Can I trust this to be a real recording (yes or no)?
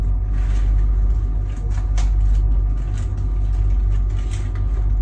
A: yes